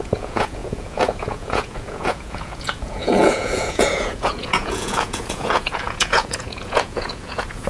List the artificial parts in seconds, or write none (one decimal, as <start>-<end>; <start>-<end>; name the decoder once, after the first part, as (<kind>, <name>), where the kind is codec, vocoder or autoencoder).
0.0-7.7 (vocoder, Vocos)

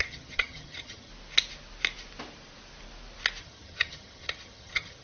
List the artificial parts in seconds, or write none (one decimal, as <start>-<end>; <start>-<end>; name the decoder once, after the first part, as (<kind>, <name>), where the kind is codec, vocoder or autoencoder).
0.0-1.1 (vocoder, HiFi-GAN); 3.4-5.0

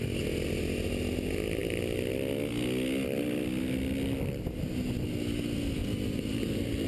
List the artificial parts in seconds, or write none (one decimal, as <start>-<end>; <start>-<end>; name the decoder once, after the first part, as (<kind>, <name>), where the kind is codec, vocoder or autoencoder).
5.8-6.9 (vocoder, BigVGAN v2)

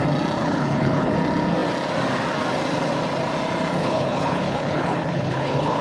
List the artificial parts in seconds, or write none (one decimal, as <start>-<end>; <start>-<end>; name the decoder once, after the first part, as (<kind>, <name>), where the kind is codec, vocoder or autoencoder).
0.4-1.1 (codec, HILCodec); 3.8-5.8